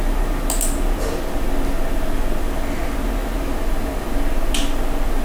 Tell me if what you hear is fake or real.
real